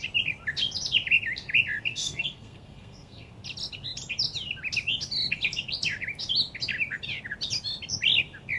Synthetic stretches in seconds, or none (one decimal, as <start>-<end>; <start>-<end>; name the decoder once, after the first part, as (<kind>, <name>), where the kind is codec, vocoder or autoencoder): 1.9-3.3 (codec, SNAC)